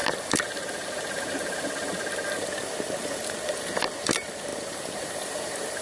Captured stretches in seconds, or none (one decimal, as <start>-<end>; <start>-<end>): none